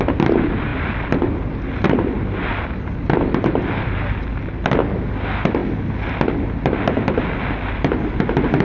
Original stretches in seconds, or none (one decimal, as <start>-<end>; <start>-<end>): 0.0-8.6